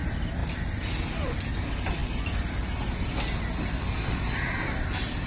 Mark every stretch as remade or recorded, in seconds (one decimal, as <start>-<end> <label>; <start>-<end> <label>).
0.0-5.3 recorded